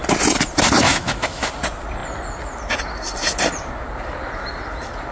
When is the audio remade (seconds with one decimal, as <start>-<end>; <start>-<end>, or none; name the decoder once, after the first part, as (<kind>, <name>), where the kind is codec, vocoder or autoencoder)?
0.9-1.5 (autoencoder, DAC-VAE)